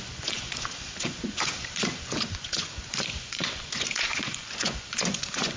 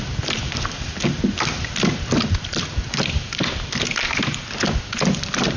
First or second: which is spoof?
first